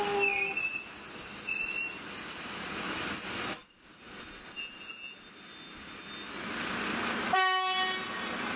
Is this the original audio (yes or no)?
yes